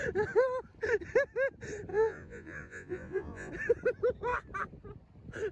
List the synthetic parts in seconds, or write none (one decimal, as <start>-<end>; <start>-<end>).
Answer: 1.9-3.5